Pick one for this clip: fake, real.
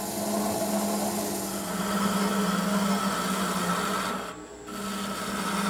real